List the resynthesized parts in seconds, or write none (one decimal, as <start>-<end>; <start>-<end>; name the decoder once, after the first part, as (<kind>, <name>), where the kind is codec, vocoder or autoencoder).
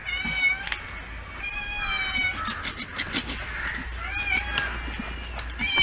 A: none